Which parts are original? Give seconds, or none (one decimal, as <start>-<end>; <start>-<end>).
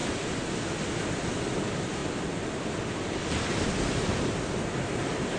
0.0-5.4